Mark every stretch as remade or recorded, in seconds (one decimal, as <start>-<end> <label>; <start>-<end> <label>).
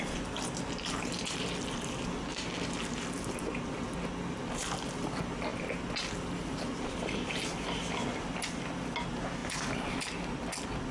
0.0-10.9 recorded